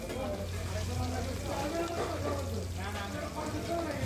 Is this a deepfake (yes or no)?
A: no